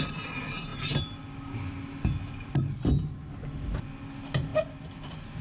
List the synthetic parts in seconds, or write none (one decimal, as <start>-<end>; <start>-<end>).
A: none